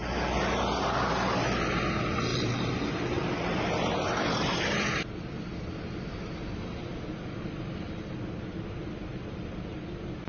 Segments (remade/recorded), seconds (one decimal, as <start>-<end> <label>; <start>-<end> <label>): 0.0-10.3 recorded